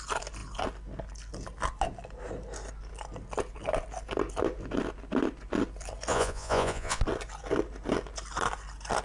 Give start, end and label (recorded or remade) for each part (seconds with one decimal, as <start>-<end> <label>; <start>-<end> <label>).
0.0-6.1 recorded; 6.1-7.0 remade; 7.0-9.0 recorded